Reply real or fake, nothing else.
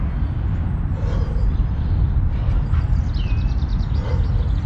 real